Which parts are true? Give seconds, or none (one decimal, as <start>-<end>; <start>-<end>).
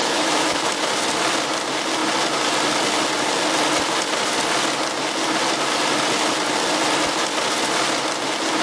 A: 0.7-8.6